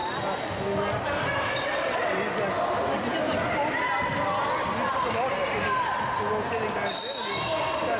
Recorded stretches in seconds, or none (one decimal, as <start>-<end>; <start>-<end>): 0.0-8.0